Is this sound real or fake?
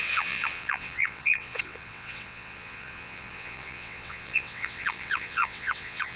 fake